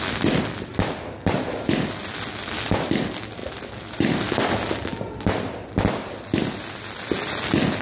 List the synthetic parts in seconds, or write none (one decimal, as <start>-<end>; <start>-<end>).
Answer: none